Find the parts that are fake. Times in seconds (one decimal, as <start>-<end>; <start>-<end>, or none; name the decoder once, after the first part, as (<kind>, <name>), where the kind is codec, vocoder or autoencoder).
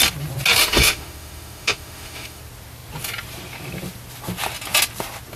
0.6-2.4 (autoencoder, DAC-VAE)